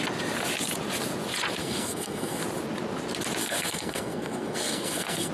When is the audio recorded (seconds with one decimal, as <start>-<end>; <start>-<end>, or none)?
0.0-1.6; 2.4-3.4